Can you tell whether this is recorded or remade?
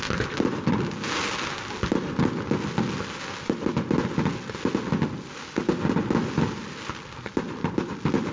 recorded